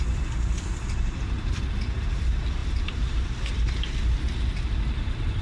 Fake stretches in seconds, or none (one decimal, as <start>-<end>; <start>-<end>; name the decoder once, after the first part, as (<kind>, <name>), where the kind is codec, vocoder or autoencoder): none